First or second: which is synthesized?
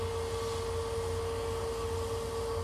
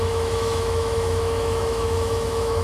second